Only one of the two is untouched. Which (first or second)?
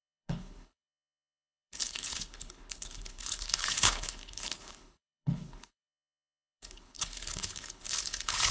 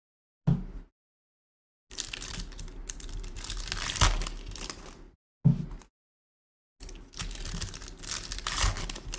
second